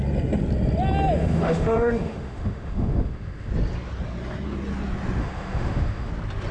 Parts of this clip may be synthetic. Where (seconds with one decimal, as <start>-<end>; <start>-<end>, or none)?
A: 1.2-3.5; 5.2-6.1